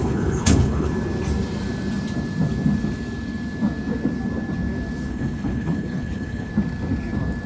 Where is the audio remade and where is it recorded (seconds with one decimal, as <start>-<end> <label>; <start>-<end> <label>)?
0.0-0.9 remade; 0.9-5.1 recorded; 5.1-6.5 remade; 6.5-7.5 recorded